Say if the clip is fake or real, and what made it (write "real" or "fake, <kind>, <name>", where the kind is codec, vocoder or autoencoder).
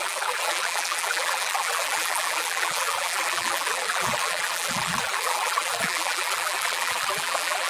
fake, vocoder, BigVGAN v2